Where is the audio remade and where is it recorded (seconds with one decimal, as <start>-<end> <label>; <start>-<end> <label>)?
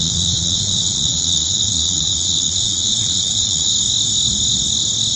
0.0-3.7 remade; 3.7-5.2 recorded